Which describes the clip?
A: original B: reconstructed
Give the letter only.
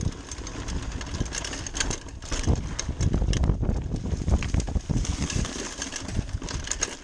A